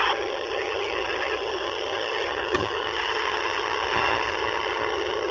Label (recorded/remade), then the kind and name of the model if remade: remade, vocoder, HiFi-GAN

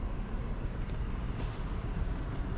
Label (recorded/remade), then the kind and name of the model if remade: recorded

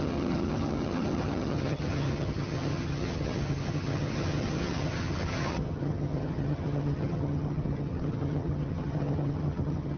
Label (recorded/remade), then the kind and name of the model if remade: remade, vocoder, HiFi-GAN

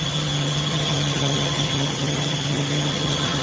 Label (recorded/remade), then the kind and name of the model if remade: remade, vocoder, HiFi-GAN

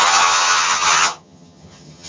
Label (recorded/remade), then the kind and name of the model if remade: remade, vocoder, HiFi-GAN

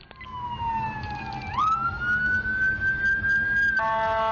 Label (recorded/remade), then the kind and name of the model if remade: recorded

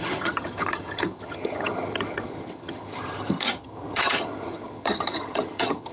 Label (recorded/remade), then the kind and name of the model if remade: remade, vocoder, HiFi-GAN